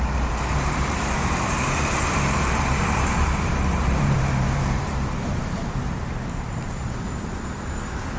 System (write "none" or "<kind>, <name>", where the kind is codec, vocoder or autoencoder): vocoder, BigVGAN v2